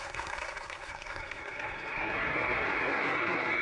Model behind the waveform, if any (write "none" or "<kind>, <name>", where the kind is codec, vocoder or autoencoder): codec, SNAC